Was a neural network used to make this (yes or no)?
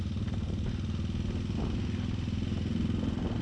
no